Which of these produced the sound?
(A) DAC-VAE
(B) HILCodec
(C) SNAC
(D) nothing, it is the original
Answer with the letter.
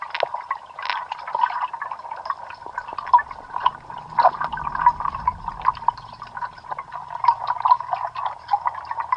D